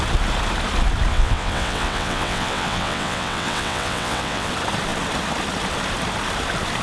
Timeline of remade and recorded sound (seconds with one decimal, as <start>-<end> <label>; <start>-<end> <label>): 0.0-1.1 recorded; 1.1-4.5 remade; 4.5-6.8 recorded